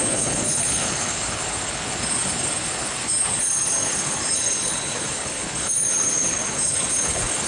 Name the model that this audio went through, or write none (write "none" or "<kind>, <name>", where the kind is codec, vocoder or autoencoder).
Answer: codec, HILCodec